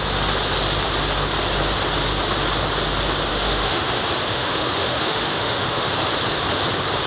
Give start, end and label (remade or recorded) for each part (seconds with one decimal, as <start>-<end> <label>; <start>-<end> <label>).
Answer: 0.0-3.3 recorded; 3.3-3.9 remade; 3.9-4.3 recorded; 4.3-5.9 remade; 5.9-7.1 recorded